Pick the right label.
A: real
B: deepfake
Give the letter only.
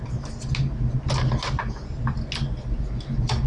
A